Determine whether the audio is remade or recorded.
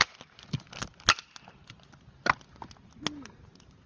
recorded